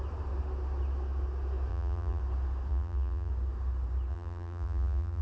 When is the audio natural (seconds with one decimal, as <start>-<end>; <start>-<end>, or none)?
0.0-1.7; 2.2-2.7; 3.3-4.1